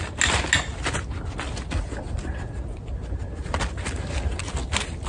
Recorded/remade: recorded